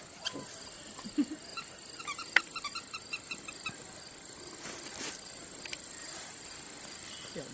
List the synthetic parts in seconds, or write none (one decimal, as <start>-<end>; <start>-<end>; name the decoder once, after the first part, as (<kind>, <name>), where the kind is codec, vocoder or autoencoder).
0.0-1.5 (vocoder, BigVGAN v2); 2.0-7.5